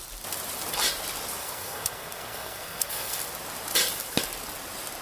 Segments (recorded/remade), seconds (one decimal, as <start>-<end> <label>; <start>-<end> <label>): 0.0-1.4 recorded; 1.4-3.2 remade; 3.2-5.0 recorded